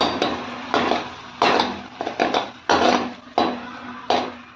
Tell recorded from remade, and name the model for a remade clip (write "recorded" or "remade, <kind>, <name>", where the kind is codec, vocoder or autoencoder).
recorded